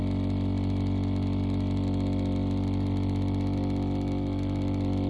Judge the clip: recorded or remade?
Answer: recorded